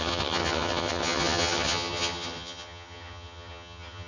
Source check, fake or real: fake